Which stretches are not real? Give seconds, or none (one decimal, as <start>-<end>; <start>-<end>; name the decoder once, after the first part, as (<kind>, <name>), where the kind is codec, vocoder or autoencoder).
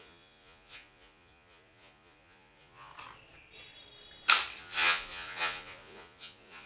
0.0-2.9 (vocoder, Vocos); 4.6-6.7